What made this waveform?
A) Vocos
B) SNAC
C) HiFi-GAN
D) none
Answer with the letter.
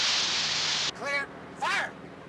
D